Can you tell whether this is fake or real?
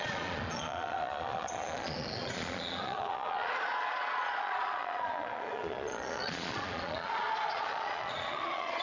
fake